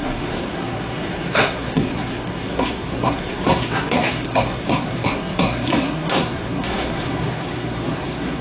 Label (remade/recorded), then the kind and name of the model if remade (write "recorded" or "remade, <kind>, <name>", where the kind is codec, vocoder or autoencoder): remade, codec, SNAC